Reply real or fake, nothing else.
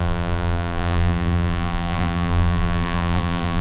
fake